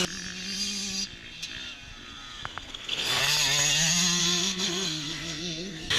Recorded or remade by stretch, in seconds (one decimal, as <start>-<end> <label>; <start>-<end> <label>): 0.0-2.7 recorded; 2.7-3.2 remade; 3.2-4.2 recorded; 4.2-6.0 remade